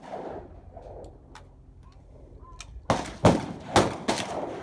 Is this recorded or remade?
recorded